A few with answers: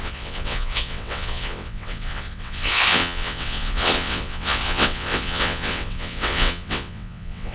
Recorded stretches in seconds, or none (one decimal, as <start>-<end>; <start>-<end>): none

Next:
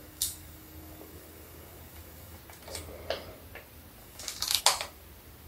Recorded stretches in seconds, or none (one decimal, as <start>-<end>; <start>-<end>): 2.4-4.0; 4.6-5.5

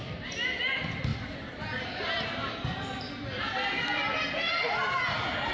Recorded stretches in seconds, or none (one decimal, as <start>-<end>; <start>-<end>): 0.0-1.1; 3.4-5.5